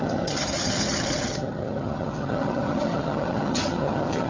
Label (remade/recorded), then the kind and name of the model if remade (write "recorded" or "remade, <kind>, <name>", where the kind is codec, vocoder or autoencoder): remade, vocoder, HiFi-GAN